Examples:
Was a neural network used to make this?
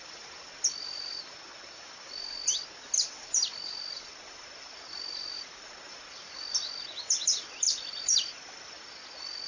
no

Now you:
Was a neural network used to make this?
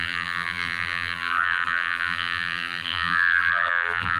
yes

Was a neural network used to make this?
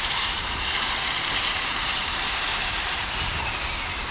yes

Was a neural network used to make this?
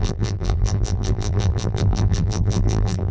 yes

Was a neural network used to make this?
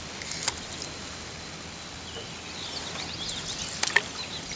no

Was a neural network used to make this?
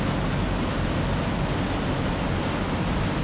no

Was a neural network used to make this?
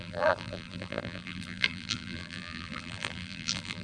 yes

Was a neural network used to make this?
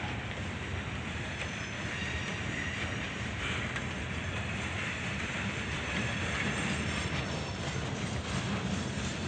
yes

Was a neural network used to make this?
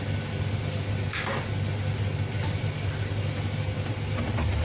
no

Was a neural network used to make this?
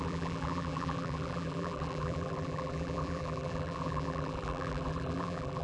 yes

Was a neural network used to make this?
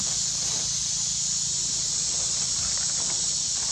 yes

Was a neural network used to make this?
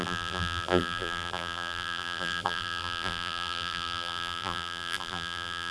yes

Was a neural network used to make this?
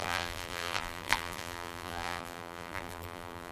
yes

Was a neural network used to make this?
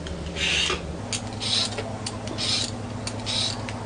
no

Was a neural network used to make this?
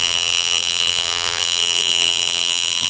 yes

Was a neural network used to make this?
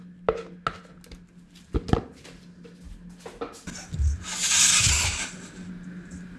no